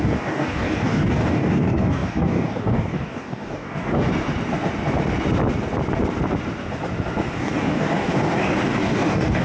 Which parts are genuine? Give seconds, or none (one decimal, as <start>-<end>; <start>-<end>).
4.1-7.4